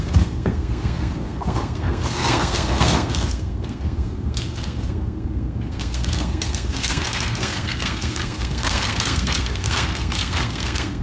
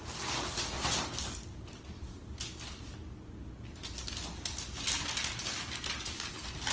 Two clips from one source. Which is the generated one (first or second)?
first